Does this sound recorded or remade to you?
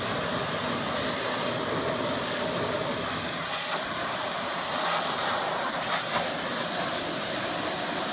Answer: recorded